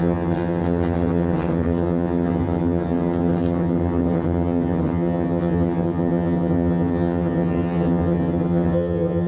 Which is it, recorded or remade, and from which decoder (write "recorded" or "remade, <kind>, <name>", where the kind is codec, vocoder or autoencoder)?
remade, vocoder, HiFi-GAN